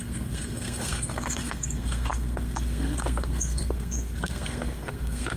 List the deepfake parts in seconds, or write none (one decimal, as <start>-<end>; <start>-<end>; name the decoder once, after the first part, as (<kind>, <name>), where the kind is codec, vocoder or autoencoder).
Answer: 0.0-5.4 (codec, SNAC)